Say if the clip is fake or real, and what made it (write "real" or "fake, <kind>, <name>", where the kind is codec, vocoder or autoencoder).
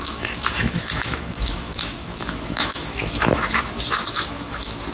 fake, autoencoder, DAC-VAE